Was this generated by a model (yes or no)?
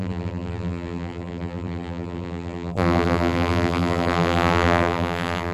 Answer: yes